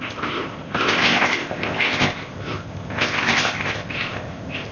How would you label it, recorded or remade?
remade